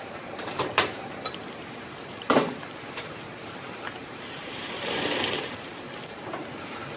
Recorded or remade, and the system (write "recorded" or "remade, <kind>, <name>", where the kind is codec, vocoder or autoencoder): remade, vocoder, BigVGAN v2